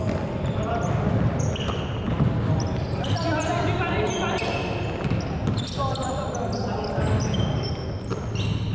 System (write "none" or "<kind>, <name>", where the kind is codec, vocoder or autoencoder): none